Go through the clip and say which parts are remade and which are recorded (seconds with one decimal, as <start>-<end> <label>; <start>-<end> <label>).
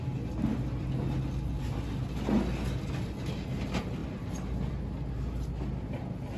0.0-6.4 recorded